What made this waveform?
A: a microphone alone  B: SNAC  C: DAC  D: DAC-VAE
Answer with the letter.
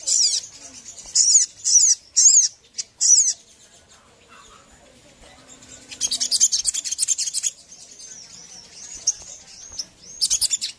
A